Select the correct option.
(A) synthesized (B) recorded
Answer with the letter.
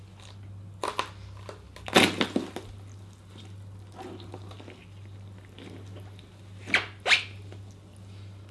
B